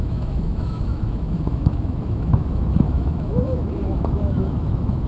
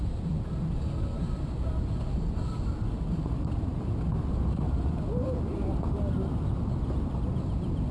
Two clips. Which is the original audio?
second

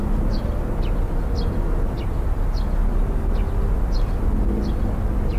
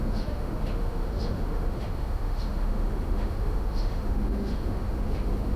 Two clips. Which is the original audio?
first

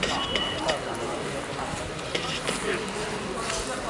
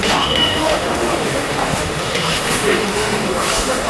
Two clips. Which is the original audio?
first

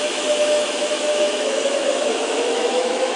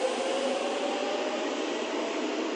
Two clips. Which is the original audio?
second